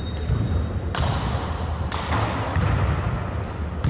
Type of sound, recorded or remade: recorded